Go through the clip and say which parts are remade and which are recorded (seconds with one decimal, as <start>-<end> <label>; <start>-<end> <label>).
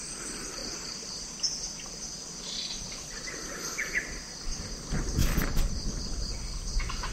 0.0-7.1 recorded